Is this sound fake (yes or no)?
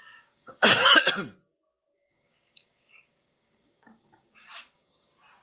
yes